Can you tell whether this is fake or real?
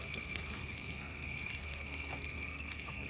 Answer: fake